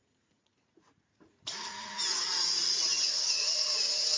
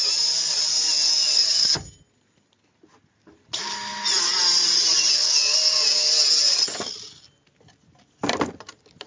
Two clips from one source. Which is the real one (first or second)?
second